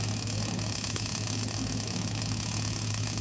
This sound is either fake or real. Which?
fake